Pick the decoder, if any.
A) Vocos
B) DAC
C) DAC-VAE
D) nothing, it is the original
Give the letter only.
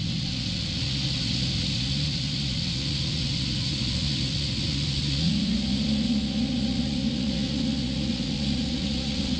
A